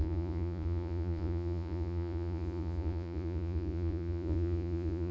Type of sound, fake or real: fake